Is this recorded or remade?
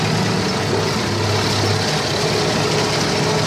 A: recorded